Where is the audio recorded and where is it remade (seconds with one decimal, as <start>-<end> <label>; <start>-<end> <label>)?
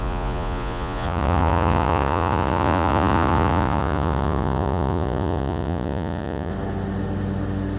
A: 0.0-6.5 remade; 6.5-7.8 recorded